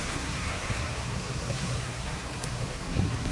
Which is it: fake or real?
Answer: fake